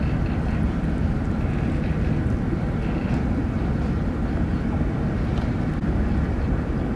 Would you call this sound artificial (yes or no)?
no